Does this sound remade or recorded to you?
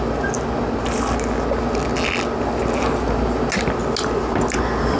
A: recorded